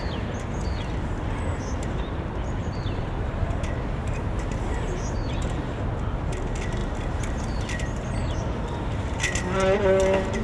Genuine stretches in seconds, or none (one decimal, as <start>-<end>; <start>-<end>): 0.0-4.0; 4.7-10.4